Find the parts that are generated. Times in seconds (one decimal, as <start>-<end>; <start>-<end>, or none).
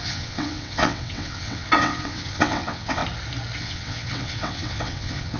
0.0-3.0; 3.6-5.4